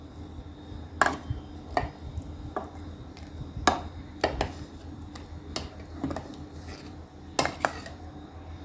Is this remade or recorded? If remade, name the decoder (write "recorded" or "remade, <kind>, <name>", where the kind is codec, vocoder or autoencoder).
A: recorded